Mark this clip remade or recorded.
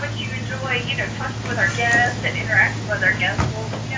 recorded